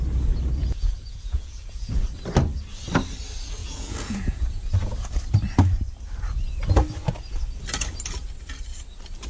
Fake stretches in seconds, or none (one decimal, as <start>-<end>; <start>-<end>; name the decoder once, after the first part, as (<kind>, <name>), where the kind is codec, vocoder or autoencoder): 0.6-2.0 (vocoder, Vocos); 3.6-4.7